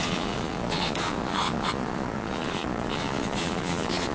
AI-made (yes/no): yes